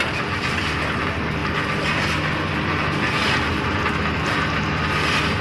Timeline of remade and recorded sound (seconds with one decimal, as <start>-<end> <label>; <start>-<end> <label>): 0.0-5.4 recorded